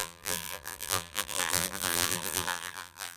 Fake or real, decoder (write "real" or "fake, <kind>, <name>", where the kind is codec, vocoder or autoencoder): fake, vocoder, BigVGAN v2